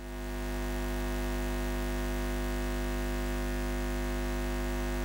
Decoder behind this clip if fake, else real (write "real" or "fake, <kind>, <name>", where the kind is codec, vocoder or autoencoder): real